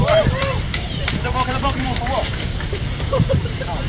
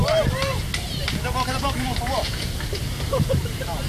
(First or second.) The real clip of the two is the second